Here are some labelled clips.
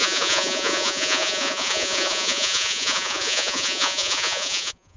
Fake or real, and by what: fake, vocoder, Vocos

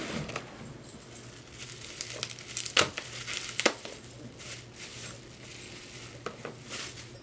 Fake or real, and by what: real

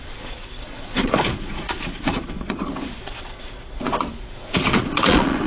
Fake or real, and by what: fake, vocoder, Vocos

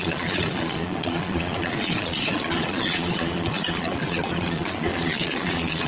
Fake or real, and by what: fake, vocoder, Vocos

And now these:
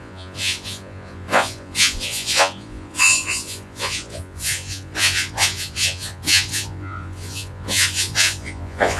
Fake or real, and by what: fake, vocoder, Vocos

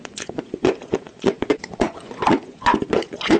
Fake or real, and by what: fake, vocoder, Vocos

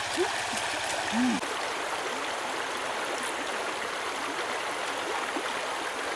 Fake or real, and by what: real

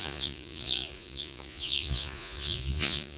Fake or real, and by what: fake, vocoder, Vocos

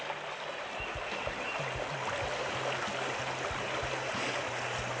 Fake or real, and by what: real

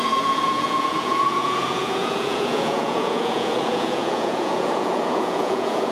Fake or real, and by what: fake, vocoder, Vocos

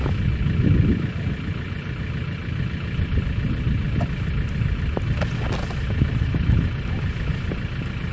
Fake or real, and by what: real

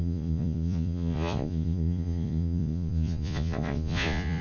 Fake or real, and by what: fake, vocoder, Vocos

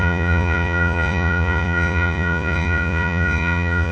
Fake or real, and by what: fake, vocoder, Vocos